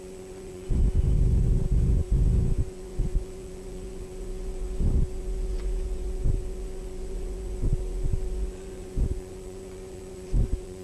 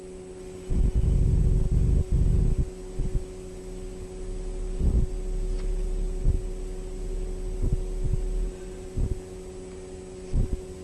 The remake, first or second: first